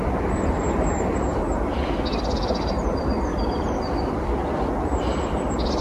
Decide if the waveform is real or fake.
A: real